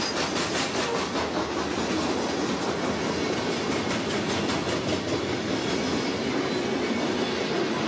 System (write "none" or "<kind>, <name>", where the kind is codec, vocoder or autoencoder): none